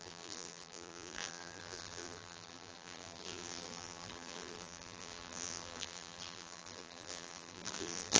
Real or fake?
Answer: fake